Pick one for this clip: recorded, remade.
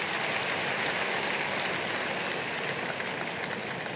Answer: recorded